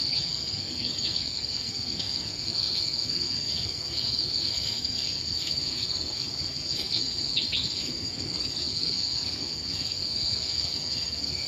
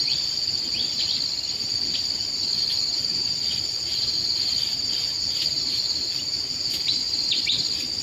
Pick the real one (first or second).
second